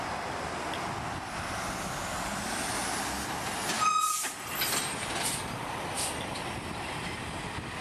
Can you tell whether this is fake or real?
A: real